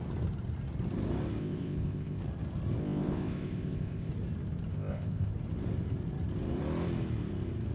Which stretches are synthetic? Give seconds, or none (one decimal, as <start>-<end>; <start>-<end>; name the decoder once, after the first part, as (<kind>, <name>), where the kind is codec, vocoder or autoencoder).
1.4-2.2 (codec, ZipCodec); 2.8-4.1; 4.7-5.3